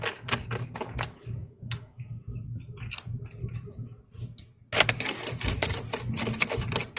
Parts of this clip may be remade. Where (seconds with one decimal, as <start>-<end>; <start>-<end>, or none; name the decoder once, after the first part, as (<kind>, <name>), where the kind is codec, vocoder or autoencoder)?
1.4-2.8 (autoencoder, DAC-VAE); 3.4-4.0